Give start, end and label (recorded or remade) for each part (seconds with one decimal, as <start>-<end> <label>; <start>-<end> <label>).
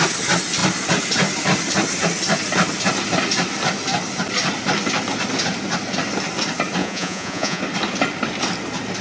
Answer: 0.0-6.8 recorded; 6.8-7.6 remade; 7.6-9.0 recorded